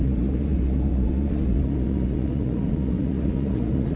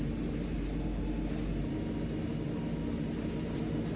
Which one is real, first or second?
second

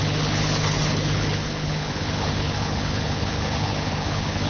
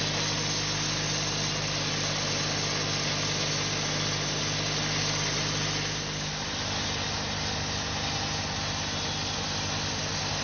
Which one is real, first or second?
second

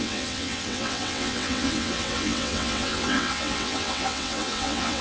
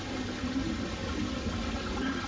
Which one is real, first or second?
second